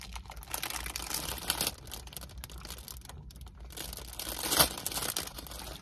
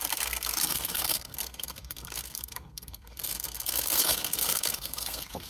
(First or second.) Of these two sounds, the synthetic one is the second